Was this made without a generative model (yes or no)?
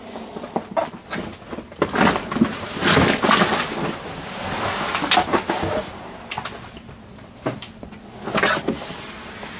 yes